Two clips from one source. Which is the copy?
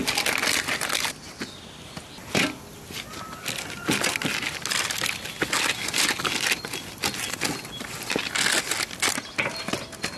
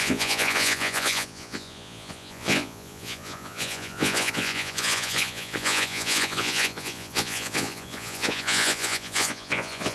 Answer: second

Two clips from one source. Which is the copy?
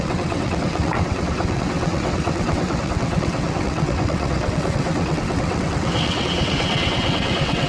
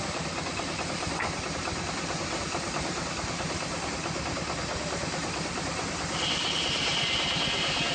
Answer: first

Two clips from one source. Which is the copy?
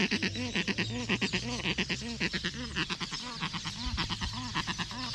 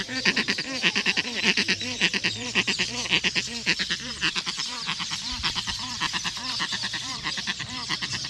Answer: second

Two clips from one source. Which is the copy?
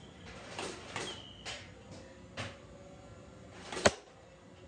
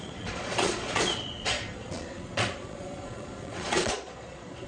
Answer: second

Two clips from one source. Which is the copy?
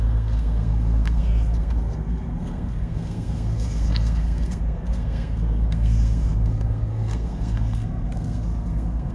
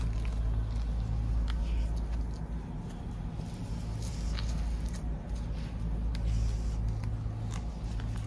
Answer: first